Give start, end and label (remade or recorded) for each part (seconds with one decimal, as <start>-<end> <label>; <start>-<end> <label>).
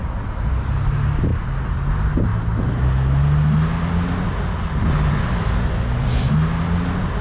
0.0-7.2 recorded